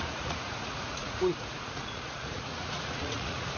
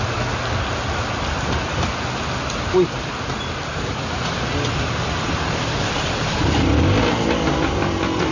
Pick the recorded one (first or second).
second